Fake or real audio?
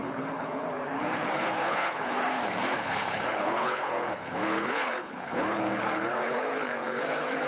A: fake